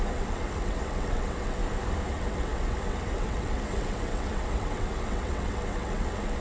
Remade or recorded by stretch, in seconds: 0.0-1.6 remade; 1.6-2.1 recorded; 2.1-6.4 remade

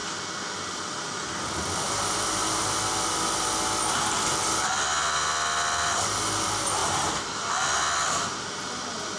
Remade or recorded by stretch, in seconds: 0.0-9.2 recorded

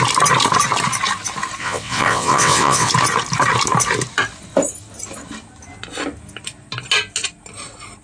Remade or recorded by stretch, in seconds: 0.0-1.6 recorded; 1.6-2.9 remade; 2.9-8.0 recorded

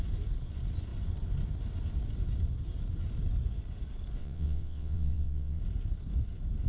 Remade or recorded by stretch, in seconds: 0.0-4.2 recorded; 4.2-5.6 remade; 5.6-6.7 recorded

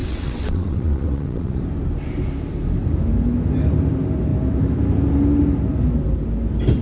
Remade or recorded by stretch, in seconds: 0.0-1.6 remade; 1.6-6.8 recorded

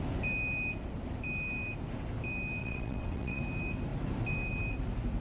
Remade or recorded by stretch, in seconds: 0.0-2.6 recorded; 2.6-3.4 remade; 3.4-5.2 recorded